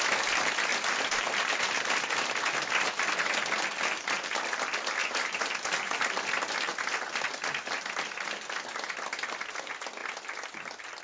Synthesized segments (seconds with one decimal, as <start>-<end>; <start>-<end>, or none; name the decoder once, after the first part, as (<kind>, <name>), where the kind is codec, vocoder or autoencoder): 0.7-1.6 (vocoder, BigVGAN v2); 5.0-5.5